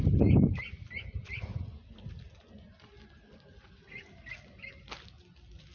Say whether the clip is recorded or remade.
recorded